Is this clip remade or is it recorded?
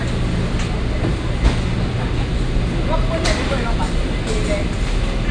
recorded